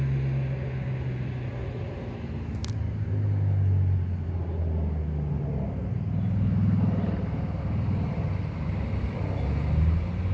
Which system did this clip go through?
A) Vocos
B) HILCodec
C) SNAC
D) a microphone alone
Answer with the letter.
D